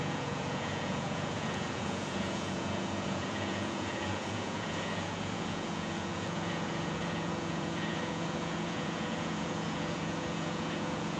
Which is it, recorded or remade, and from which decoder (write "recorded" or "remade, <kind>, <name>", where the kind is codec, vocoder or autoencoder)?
remade, vocoder, Vocos